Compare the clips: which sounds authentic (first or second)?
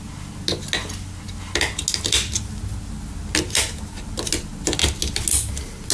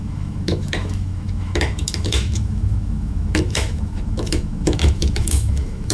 first